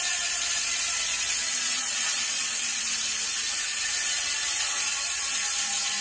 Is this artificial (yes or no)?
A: yes